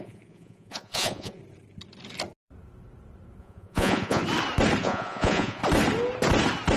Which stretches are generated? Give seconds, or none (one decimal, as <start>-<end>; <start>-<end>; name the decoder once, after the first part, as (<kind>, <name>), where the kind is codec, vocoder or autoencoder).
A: 0.0-1.4 (vocoder, Vocos); 3.4-4.2; 4.8-5.6